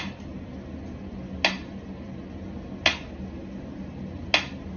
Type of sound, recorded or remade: recorded